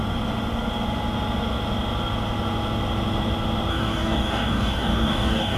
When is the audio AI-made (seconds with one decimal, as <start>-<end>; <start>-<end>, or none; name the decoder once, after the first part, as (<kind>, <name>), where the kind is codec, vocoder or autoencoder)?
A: 3.7-5.6 (codec, DAC)